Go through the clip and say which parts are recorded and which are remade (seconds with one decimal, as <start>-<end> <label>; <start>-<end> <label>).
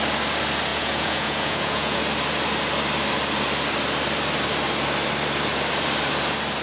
0.0-0.7 recorded; 0.7-2.0 remade; 2.0-6.6 recorded